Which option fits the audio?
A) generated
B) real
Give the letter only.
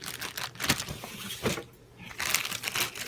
B